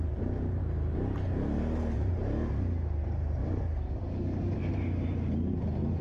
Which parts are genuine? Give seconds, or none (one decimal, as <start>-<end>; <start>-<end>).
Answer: 0.0-3.4; 4.7-6.0